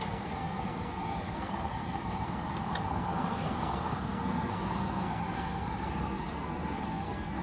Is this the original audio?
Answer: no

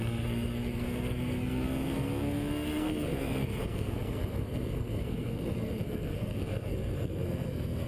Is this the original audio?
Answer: no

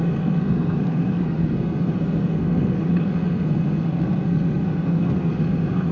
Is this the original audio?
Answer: no